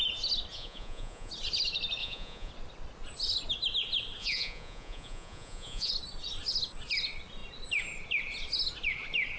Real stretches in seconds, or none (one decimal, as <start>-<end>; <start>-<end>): 0.0-0.5; 1.3-2.0; 2.5-4.2; 5.9-9.4